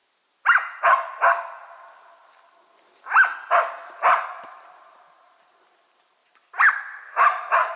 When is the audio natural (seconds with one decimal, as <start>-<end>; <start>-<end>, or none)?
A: 0.0-4.5; 6.2-6.7